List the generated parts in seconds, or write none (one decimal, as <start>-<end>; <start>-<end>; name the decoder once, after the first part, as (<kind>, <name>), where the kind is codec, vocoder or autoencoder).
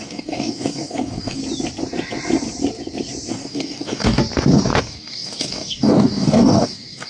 0.0-1.4 (codec, DAC); 3.3-4.2; 4.8-7.1